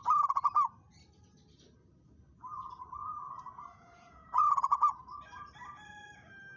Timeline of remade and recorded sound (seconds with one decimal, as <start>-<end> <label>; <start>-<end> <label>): 0.0-3.0 recorded; 3.0-4.9 remade; 4.9-6.6 recorded